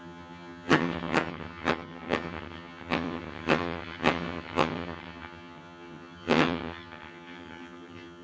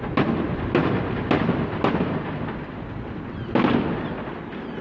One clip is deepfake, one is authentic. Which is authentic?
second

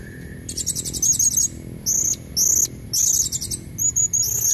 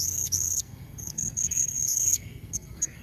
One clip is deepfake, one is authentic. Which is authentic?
first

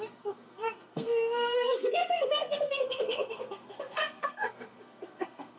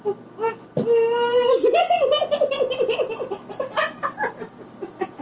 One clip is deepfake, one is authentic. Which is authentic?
second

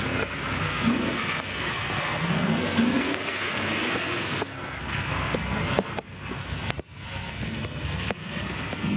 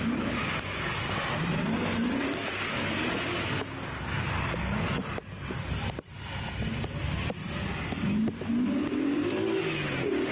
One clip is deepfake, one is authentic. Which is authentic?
second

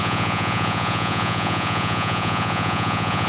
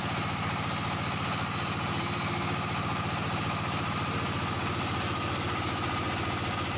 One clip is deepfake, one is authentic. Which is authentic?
second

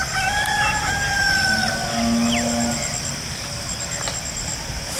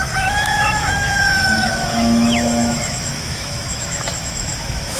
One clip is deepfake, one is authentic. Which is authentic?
first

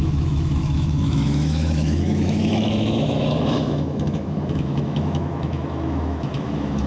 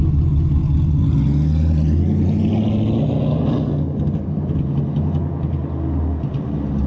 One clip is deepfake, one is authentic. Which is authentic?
second